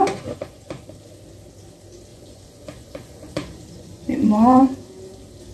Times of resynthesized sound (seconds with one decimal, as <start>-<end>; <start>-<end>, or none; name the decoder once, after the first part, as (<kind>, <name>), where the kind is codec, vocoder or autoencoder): 0.0-0.9 (vocoder, Vocos); 2.1-4.6